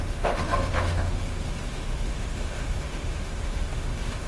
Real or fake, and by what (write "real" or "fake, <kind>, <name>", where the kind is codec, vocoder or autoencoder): fake, autoencoder, DAC-VAE